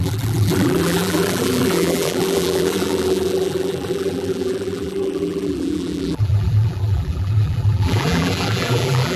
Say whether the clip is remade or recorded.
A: remade